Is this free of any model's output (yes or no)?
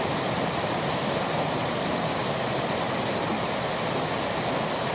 yes